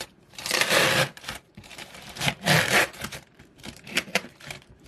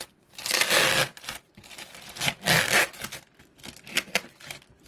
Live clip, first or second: second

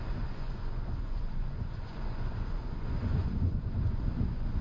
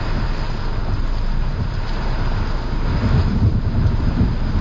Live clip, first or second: second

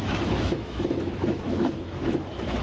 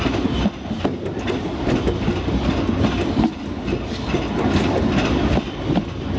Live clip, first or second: second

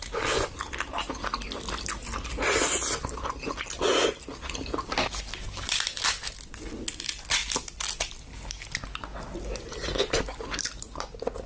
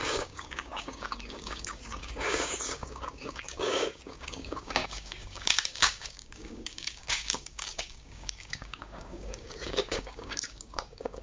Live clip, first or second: first